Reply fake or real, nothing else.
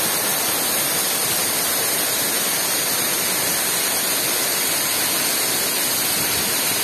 real